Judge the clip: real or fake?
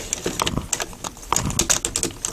real